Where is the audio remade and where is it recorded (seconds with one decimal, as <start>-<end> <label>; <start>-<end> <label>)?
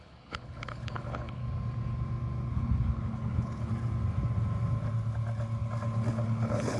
0.0-1.4 remade; 1.4-2.5 recorded; 2.5-3.7 remade; 3.7-6.1 recorded; 6.1-6.8 remade